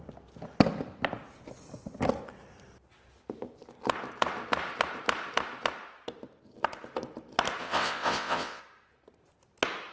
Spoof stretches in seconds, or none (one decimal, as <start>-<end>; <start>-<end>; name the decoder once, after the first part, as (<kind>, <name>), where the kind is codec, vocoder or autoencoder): 7.6-8.6 (vocoder, WaveNeXt)